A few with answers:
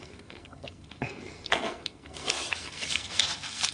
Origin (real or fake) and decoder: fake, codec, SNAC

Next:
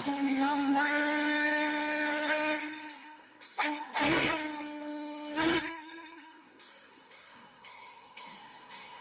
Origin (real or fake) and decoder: fake, codec, SNAC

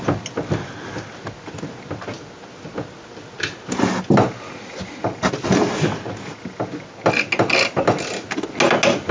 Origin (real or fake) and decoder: real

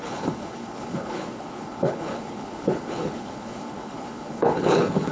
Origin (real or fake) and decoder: fake, codec, HILCodec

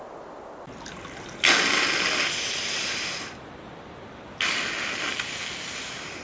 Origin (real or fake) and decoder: real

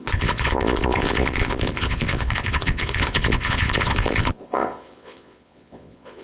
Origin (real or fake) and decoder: fake, vocoder, Vocos